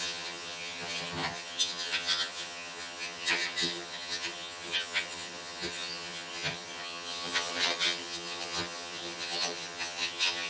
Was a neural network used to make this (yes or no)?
yes